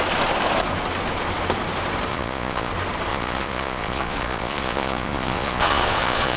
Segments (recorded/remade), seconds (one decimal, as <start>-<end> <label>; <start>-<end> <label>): 0.0-2.1 recorded; 2.1-2.7 remade; 2.7-3.1 recorded; 3.1-6.4 remade